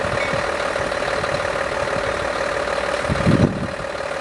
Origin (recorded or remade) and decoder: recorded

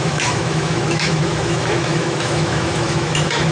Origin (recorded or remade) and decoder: remade, autoencoder, DAC-VAE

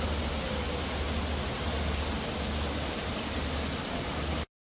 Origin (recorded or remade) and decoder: recorded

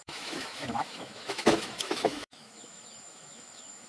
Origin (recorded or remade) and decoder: remade, autoencoder, DAC-VAE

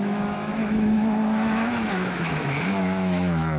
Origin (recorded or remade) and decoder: remade, autoencoder, DAC-VAE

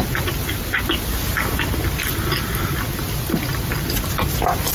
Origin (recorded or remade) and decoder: recorded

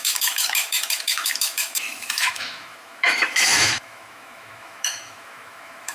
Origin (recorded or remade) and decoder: remade, autoencoder, DAC-VAE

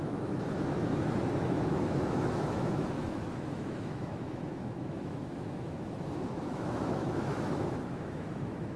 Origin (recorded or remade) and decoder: remade, autoencoder, DAC-VAE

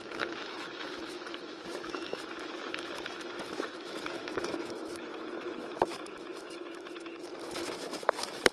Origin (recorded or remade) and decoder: remade, autoencoder, DAC-VAE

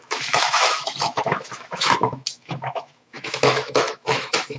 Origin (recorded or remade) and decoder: remade, autoencoder, DAC-VAE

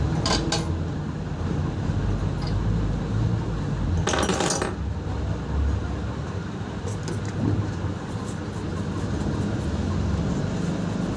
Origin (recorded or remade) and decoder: recorded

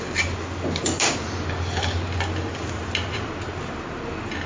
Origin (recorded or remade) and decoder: recorded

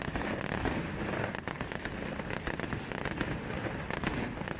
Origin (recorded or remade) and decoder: recorded